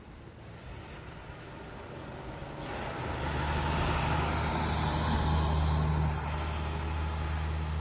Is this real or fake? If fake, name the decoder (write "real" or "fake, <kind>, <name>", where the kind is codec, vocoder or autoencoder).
real